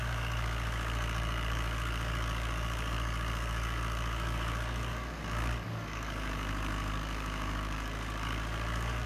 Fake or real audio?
fake